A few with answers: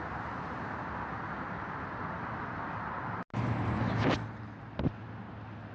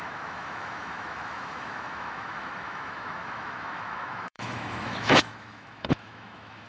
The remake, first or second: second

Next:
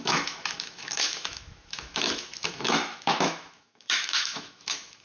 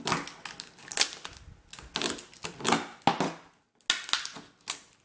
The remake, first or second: first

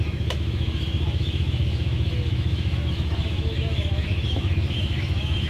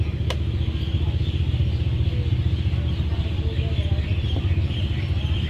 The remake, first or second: first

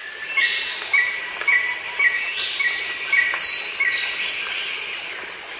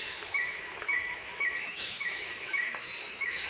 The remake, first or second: second